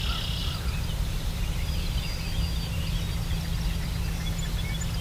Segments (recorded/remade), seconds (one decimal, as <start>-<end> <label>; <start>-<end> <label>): 0.0-0.4 recorded; 0.4-2.2 remade; 2.2-5.0 recorded